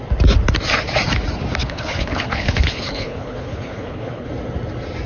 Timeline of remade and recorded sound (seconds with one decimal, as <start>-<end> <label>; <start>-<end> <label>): 0.0-1.6 recorded; 1.6-4.3 remade; 4.3-5.1 recorded